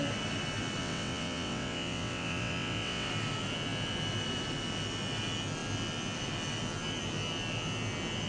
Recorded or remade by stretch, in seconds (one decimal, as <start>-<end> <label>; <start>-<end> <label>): 0.0-0.8 recorded; 0.8-3.1 remade; 3.1-8.3 recorded